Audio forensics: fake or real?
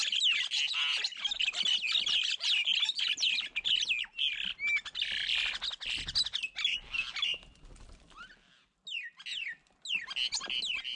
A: real